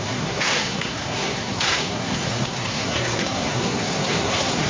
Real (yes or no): no